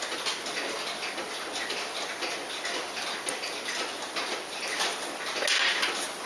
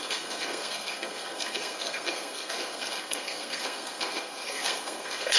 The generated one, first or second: second